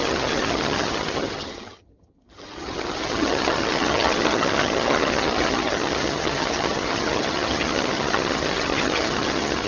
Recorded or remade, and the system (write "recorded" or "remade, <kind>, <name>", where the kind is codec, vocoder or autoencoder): remade, vocoder, HiFi-GAN